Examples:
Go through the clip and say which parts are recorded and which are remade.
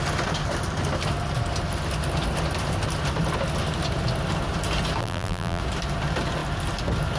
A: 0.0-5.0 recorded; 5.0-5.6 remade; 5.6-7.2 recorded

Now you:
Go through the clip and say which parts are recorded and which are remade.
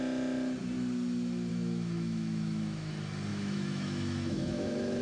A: 0.0-1.5 recorded; 1.5-2.9 remade; 2.9-3.3 recorded; 3.3-5.0 remade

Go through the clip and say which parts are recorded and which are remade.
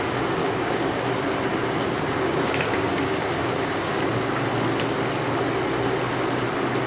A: 0.0-0.4 recorded; 0.4-1.0 remade; 1.0-1.5 recorded; 1.5-4.5 remade; 4.5-6.9 recorded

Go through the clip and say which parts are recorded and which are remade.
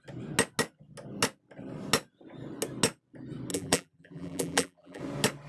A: 0.0-3.5 recorded; 3.5-5.0 remade; 5.0-5.5 recorded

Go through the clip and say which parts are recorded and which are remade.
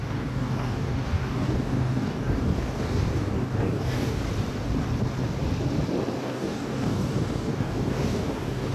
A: 0.0-4.2 remade; 4.2-6.2 recorded; 6.2-8.7 remade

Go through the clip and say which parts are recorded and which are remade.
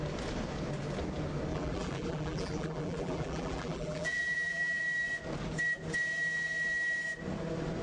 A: 0.0-1.5 recorded; 1.5-4.8 remade; 4.8-7.8 recorded